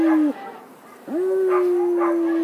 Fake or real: real